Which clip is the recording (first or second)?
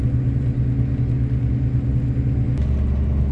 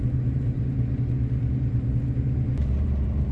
first